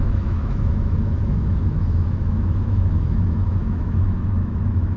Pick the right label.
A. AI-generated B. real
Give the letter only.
A